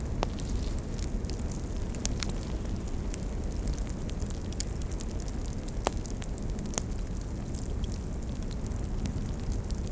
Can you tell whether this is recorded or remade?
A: recorded